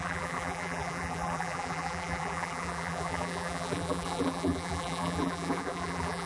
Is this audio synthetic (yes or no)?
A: yes